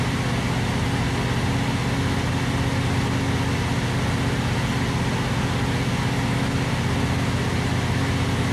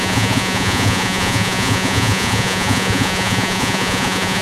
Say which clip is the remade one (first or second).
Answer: second